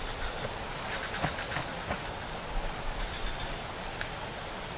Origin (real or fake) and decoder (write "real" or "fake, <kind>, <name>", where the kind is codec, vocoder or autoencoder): real